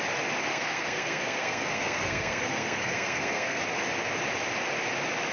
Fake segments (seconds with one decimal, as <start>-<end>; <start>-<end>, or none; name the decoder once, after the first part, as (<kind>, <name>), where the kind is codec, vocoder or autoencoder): 0.4-3.6 (codec, SNAC)